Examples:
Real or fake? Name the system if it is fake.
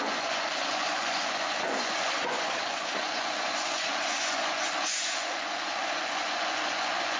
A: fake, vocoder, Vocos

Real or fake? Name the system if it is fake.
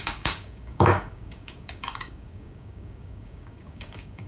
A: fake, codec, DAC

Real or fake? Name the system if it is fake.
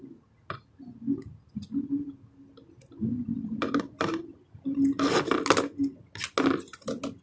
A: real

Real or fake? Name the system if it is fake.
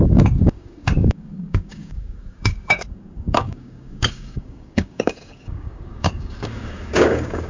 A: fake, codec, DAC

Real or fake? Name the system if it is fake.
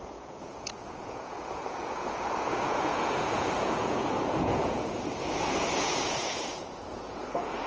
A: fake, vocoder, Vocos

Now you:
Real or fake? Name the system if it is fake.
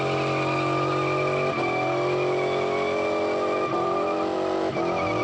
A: real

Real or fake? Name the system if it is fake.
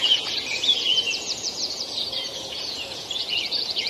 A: fake, vocoder, Vocos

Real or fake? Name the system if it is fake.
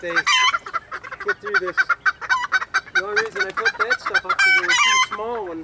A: real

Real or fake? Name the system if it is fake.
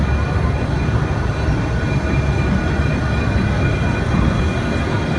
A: real